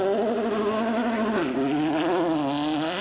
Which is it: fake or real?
real